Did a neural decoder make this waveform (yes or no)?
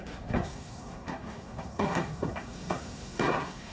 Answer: yes